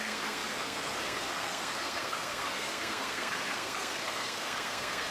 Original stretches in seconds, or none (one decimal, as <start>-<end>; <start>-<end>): none